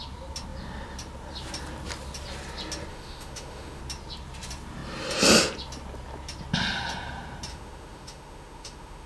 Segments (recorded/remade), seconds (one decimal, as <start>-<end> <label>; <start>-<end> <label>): 0.0-2.9 recorded; 2.9-3.8 remade; 3.8-7.5 recorded; 7.5-9.1 remade